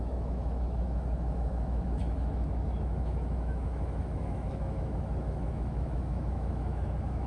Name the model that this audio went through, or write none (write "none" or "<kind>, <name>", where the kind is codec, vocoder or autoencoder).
autoencoder, DAC-VAE